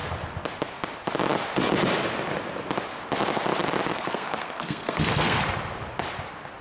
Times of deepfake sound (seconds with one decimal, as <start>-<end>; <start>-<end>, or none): 3.9-5.4